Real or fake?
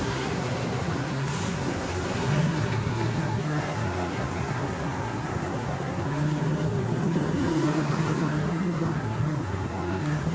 fake